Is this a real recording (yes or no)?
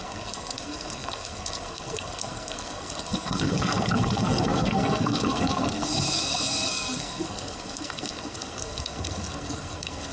no